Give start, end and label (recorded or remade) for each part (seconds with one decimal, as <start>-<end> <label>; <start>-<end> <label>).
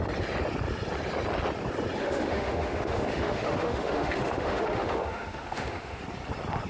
0.0-2.0 recorded; 2.0-6.0 remade; 6.0-6.7 recorded